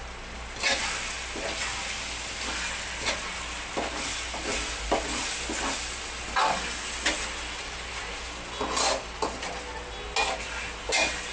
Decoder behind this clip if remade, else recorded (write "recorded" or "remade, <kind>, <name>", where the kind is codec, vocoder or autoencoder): recorded